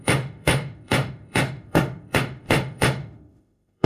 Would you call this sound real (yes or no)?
no